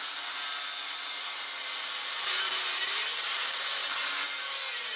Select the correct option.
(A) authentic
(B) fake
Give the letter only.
A